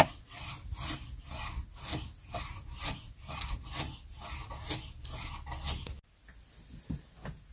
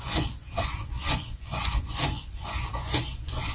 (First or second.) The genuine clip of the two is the first